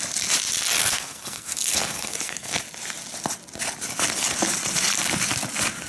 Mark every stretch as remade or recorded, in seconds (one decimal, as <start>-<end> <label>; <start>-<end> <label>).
0.0-0.8 recorded; 0.8-2.6 remade; 2.6-5.9 recorded